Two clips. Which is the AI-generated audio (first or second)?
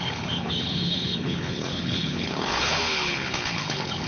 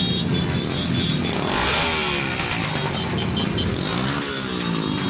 first